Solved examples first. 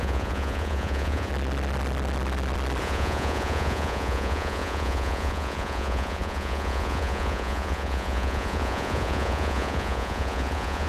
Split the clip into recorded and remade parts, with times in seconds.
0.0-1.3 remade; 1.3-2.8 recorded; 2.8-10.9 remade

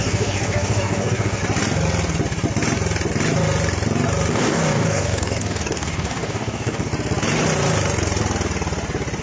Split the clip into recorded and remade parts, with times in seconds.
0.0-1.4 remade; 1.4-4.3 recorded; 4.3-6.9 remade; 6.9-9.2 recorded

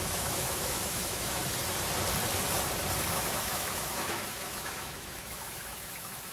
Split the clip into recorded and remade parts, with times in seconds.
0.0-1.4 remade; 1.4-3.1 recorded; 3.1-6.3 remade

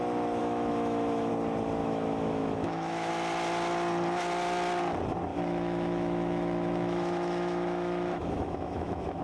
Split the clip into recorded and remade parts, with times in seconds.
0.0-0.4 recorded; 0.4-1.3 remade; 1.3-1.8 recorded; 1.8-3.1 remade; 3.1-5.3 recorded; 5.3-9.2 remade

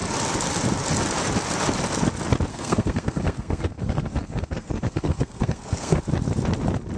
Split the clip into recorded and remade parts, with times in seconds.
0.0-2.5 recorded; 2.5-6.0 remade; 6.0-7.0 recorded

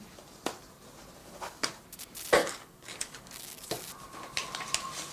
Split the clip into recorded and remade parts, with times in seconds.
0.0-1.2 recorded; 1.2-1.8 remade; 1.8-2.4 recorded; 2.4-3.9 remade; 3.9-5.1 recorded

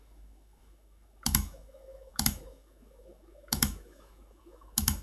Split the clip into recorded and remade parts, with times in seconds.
0.0-5.0 remade

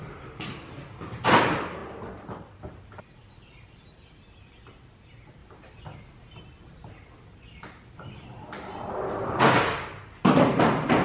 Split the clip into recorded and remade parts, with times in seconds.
0.0-11.0 recorded